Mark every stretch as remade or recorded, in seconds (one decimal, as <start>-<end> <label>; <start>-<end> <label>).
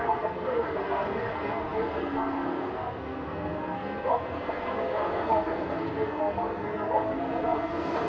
0.0-8.1 remade